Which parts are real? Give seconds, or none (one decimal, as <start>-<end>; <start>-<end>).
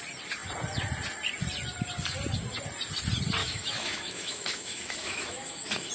0.0-3.4